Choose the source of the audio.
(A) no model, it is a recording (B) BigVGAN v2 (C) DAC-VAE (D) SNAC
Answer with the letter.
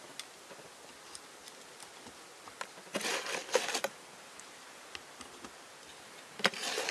A